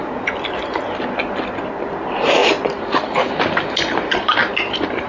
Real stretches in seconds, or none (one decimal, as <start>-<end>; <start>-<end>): 0.0-5.1